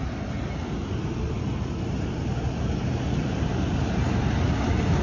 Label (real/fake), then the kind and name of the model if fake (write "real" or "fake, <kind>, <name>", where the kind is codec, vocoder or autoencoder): real